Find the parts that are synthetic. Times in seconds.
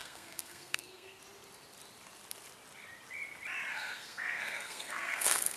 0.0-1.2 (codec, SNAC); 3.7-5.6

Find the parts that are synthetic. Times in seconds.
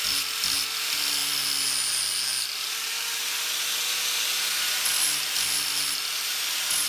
none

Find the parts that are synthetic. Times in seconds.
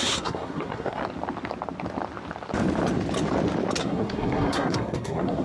0.0-1.0 (codec, SNAC); 3.8-5.4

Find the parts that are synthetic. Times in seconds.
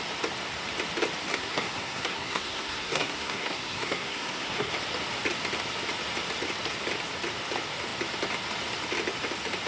1.3-4.7 (codec, SNAC)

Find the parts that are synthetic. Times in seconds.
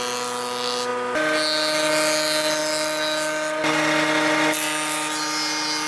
none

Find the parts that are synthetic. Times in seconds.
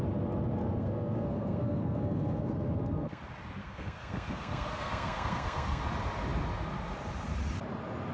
0.6-3.2 (codec, SNAC); 3.6-5.8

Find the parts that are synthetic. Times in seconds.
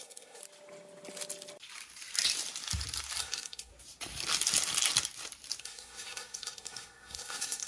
0.0-0.4 (codec, SNAC); 3.2-3.7; 5.6-7.7